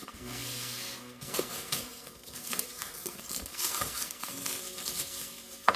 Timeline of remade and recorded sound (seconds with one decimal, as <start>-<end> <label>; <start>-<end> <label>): 0.0-5.8 remade